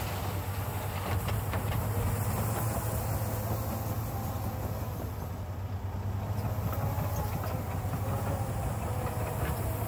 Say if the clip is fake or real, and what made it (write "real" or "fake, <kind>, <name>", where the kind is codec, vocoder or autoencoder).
real